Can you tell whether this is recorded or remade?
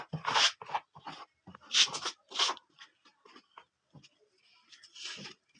recorded